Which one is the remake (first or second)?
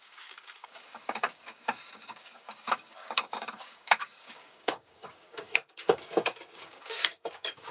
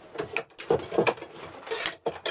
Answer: first